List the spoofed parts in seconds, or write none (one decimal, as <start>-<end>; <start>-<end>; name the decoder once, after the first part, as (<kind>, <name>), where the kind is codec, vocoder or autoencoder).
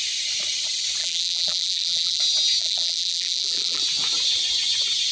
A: 1.0-2.2 (vocoder, BigVGAN v2); 2.6-3.8